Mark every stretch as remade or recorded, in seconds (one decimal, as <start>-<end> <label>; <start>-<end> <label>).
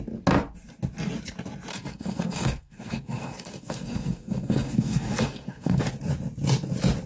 0.0-1.7 recorded; 1.7-5.8 remade; 5.8-7.1 recorded